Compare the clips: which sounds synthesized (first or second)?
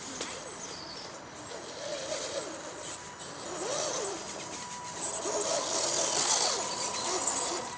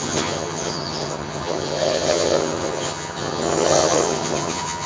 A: second